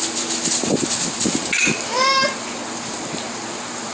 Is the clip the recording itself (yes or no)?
yes